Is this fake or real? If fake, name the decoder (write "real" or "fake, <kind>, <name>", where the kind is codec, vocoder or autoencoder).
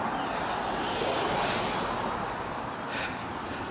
real